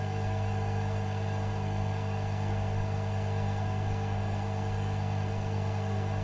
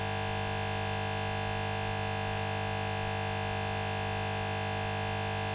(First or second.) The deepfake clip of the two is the first